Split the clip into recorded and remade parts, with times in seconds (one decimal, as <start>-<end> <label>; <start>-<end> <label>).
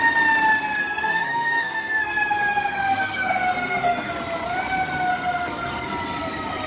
0.0-0.8 recorded; 0.8-4.1 remade; 4.1-5.1 recorded; 5.1-5.9 remade; 5.9-6.7 recorded